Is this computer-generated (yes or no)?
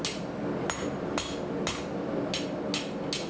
no